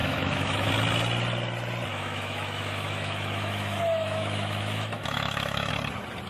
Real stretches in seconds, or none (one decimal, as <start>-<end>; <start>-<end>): 0.7-1.9; 5.7-6.3